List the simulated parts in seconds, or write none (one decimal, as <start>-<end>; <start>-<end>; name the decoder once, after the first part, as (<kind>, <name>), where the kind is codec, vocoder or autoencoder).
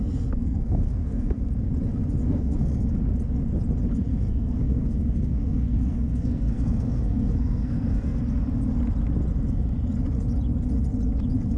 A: 0.4-1.4 (codec, SNAC); 2.2-2.9; 4.1-8.2